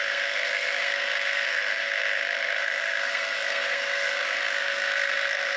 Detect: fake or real fake